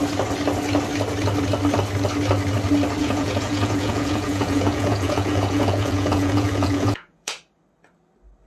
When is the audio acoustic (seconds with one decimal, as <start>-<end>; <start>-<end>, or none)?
0.0-3.0; 7.4-8.5

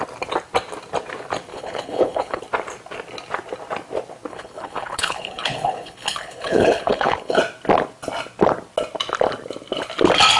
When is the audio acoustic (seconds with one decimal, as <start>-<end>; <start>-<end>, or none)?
0.0-1.5; 2.4-4.3; 7.4-10.4

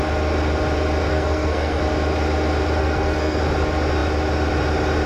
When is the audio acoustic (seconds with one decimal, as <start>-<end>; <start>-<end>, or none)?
0.0-1.1; 1.8-2.8; 3.4-5.1

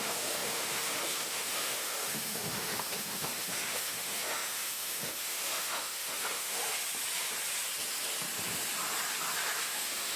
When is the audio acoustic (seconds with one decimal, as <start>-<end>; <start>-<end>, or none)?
6.6-9.6

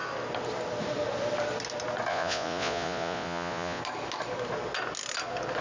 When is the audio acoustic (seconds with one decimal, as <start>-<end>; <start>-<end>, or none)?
0.0-2.1; 3.8-5.6